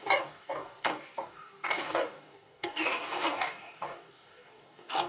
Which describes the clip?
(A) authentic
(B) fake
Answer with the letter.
B